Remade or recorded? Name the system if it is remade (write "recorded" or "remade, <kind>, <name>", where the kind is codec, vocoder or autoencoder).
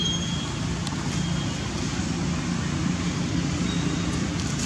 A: recorded